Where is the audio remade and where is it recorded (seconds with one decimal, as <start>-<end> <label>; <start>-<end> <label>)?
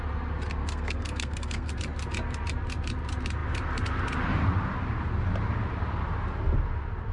0.0-0.6 recorded; 0.6-1.7 remade; 1.7-7.1 recorded